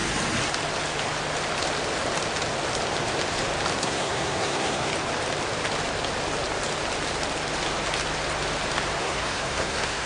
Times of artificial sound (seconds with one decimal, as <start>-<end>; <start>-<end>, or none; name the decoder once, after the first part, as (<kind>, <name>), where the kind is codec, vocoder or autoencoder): 3.8-4.9 (codec, SNAC); 9.0-10.1